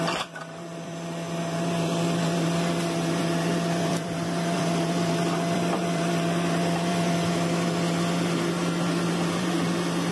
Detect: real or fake fake